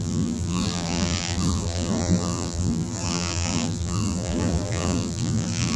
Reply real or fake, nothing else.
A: fake